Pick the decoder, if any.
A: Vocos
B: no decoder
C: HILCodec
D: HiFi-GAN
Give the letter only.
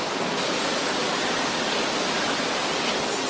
B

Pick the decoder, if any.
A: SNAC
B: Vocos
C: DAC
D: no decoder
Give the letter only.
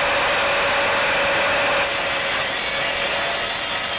D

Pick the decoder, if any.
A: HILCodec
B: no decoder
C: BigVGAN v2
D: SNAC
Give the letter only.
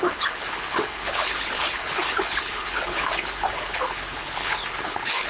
A